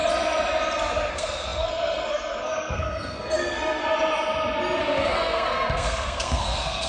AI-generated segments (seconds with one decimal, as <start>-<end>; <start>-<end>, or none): 1.1-3.8; 4.8-6.9